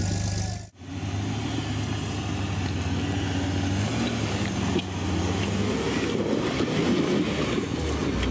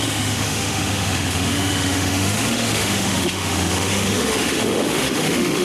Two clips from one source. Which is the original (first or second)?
first